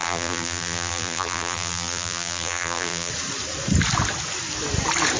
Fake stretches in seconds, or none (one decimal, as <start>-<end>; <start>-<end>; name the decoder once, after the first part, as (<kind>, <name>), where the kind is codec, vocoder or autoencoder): 0.0-3.1 (vocoder, BigVGAN v2)